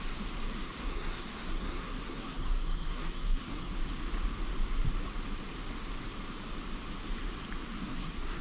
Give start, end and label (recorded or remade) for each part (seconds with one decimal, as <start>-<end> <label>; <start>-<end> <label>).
0.0-0.8 recorded; 0.8-3.7 remade; 3.7-7.7 recorded; 7.7-8.4 remade